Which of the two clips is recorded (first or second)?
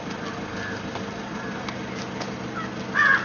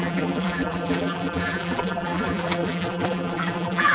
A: first